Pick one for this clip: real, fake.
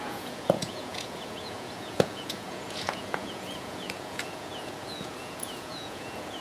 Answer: fake